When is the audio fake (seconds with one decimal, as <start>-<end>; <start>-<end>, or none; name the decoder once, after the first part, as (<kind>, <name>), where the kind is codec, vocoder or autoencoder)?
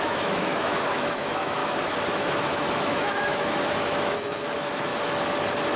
0.0-1.6 (autoencoder, DAC-VAE); 2.1-4.9